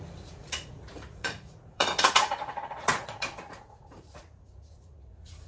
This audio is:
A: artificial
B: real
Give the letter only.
A